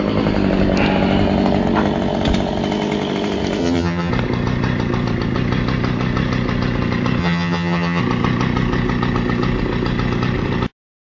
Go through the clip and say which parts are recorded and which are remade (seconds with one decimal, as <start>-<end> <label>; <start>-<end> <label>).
0.0-3.6 recorded; 3.6-4.1 remade; 4.1-7.2 recorded; 7.2-8.0 remade; 8.0-11.0 recorded